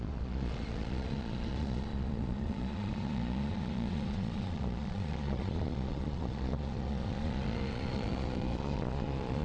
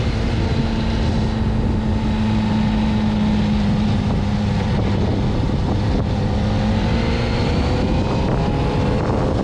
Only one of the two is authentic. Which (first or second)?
second